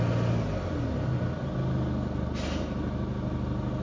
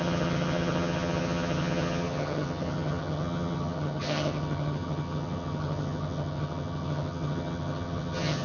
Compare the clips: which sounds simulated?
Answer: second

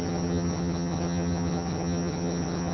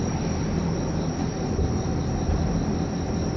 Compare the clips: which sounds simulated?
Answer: first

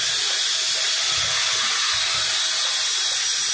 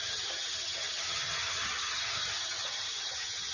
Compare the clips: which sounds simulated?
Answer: second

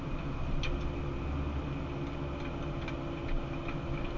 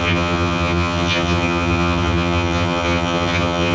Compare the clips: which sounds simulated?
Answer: second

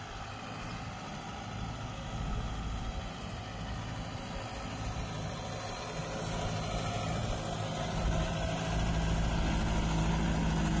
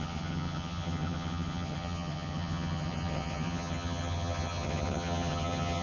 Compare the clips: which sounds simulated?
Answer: second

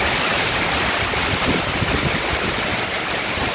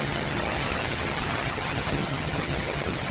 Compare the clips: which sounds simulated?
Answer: second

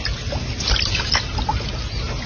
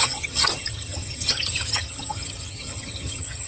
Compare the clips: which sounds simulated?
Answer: second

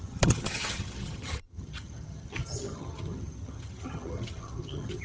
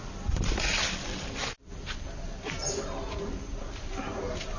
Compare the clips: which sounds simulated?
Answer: first